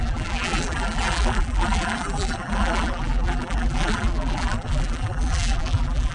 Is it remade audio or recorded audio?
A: remade